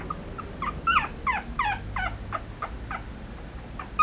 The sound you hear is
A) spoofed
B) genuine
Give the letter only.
B